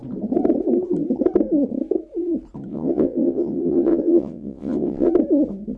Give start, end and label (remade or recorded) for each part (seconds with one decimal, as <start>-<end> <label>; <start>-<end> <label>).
0.0-2.7 recorded; 2.7-5.1 remade; 5.1-5.8 recorded